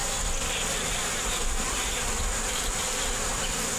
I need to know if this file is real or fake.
fake